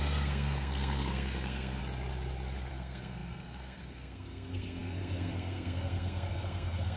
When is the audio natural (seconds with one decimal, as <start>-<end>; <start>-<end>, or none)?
1.8-2.7